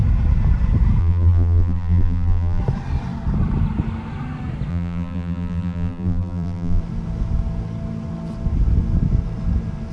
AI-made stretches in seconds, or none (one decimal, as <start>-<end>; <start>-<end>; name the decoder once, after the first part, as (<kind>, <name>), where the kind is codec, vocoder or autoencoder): 1.0-2.6 (vocoder, BigVGAN v2); 4.7-6.8